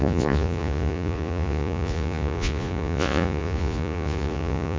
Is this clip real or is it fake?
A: fake